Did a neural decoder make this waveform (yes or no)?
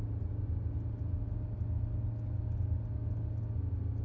no